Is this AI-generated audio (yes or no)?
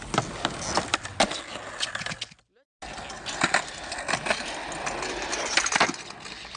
no